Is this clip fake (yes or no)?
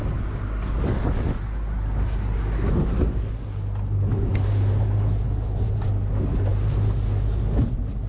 no